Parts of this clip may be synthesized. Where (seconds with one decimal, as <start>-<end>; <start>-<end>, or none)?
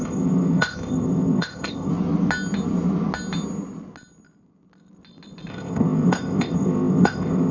0.0-1.9; 5.5-7.5